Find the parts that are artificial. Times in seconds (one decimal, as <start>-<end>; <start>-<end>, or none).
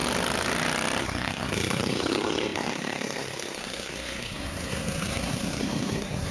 1.0-6.3